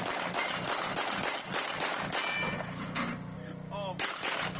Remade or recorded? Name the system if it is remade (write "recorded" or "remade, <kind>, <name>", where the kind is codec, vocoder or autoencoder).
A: recorded